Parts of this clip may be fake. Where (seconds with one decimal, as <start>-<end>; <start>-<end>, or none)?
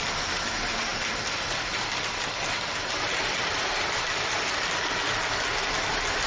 0.9-4.5